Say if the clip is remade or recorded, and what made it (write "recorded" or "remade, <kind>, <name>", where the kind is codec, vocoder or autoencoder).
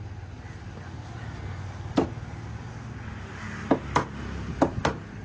recorded